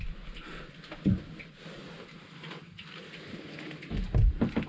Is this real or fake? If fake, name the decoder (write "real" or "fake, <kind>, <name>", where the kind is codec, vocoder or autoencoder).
real